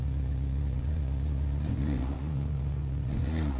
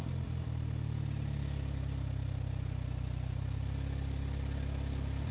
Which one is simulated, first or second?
first